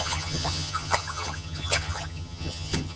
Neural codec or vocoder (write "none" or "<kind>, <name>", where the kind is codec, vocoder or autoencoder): vocoder, HiFi-GAN